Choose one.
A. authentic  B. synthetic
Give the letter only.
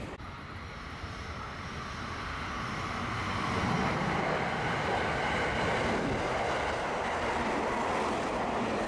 A